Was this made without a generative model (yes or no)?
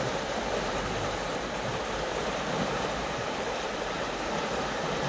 no